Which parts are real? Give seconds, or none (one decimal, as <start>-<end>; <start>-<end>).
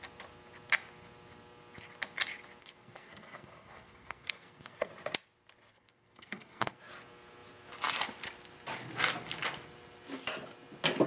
0.0-2.6; 4.9-5.7; 6.9-11.1